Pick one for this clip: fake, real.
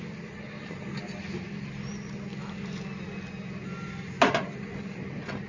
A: real